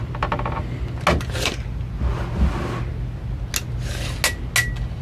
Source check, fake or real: real